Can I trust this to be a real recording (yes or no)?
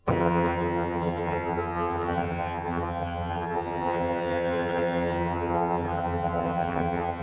no